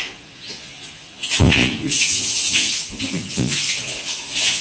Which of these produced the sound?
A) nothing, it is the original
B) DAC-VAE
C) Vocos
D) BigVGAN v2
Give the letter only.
C